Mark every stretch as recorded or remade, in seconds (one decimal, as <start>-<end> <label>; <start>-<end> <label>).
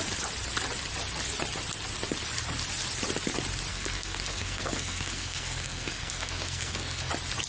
0.0-3.7 recorded; 3.7-7.1 remade; 7.1-7.5 recorded